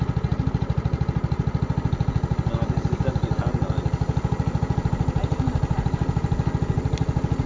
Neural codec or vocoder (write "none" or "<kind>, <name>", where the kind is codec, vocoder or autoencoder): none